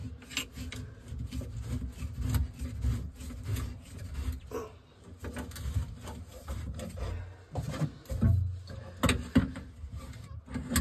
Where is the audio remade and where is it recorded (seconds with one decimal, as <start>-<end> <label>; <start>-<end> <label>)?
0.0-3.5 recorded; 3.5-4.3 remade; 4.3-6.3 recorded; 6.3-7.2 remade; 7.2-9.4 recorded; 9.4-10.4 remade; 10.4-10.8 recorded